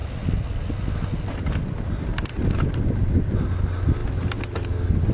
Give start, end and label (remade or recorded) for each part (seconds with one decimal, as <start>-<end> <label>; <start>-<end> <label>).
0.0-5.1 recorded